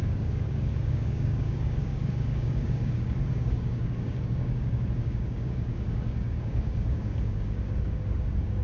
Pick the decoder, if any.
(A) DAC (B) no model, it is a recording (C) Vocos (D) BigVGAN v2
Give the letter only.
A